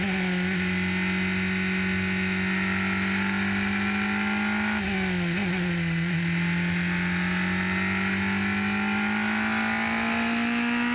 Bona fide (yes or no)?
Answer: yes